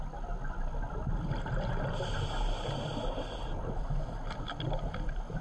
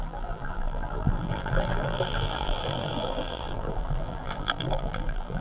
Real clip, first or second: first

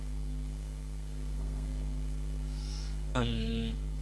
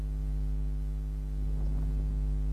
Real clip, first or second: second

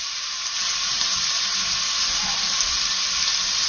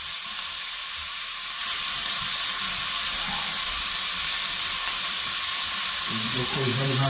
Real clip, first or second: first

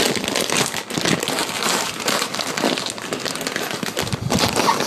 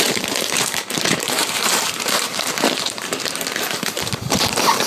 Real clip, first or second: first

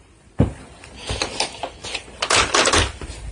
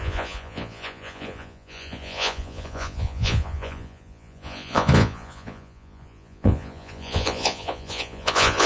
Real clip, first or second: first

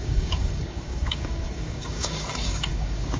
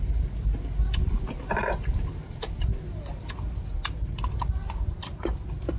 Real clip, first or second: second